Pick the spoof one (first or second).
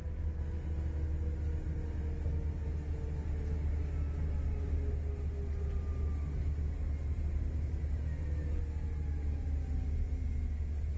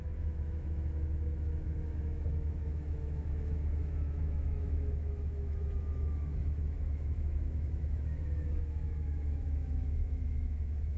second